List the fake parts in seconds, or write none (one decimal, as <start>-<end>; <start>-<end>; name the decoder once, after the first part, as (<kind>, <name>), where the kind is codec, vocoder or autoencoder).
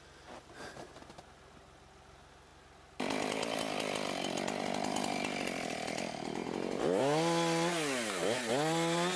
none